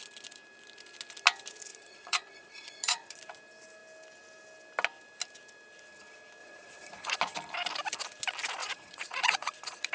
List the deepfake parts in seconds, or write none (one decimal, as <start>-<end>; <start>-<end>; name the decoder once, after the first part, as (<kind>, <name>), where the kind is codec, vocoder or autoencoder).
1.7-3.2 (vocoder, Vocos); 6.4-7.2; 8.6-9.9